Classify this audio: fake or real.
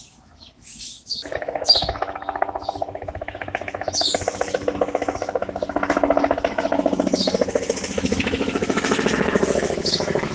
fake